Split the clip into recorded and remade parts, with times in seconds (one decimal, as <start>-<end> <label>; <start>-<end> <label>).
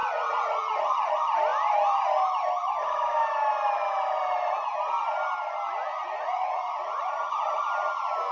0.0-1.1 remade; 1.1-5.9 recorded; 5.9-7.6 remade; 7.6-8.3 recorded